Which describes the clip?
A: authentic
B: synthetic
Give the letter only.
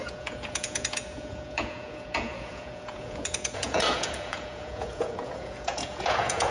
B